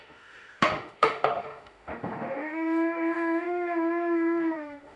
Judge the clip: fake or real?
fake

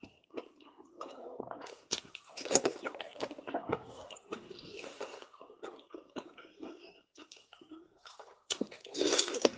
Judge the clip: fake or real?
fake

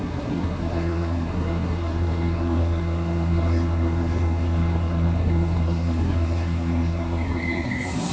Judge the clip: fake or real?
fake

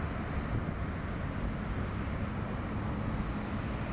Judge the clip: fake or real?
real